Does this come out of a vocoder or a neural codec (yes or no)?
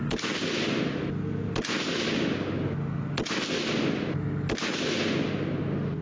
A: no